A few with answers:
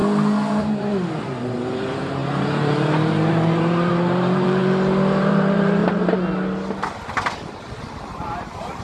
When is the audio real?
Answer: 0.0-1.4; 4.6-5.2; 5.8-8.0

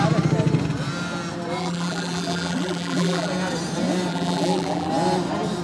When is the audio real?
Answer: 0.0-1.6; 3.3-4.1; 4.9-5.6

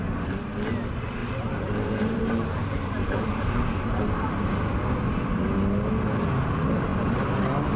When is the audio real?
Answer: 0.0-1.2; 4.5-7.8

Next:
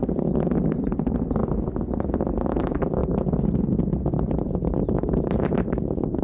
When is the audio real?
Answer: 0.0-0.6; 1.4-2.6; 3.0-4.0

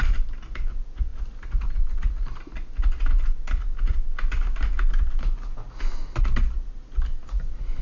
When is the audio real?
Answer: 0.0-7.8

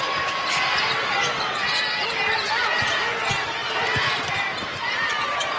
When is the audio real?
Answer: 0.0-5.6

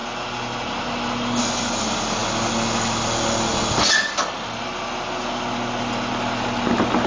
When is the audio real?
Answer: 0.0-7.1